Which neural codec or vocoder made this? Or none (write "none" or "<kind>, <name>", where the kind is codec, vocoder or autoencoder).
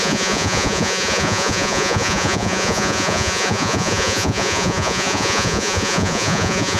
vocoder, Vocos